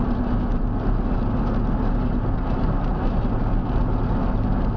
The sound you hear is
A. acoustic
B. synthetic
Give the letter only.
A